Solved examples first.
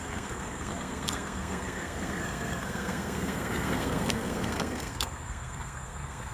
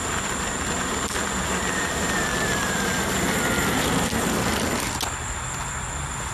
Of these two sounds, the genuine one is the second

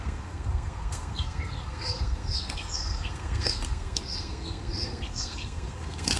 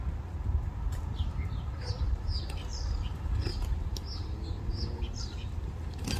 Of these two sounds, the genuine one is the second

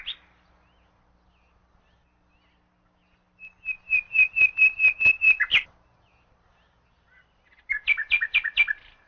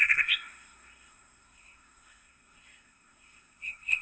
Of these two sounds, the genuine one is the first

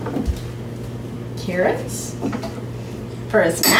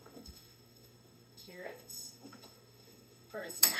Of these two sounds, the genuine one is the first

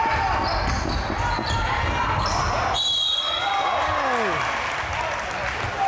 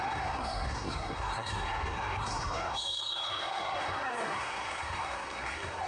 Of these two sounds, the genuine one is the first